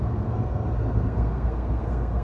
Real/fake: fake